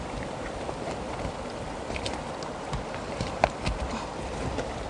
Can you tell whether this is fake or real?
real